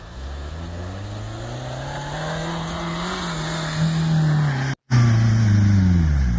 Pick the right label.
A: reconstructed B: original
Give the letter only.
B